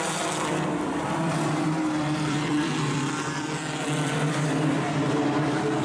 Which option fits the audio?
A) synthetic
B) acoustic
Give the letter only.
A